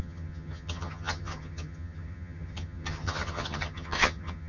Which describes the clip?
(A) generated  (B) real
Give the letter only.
A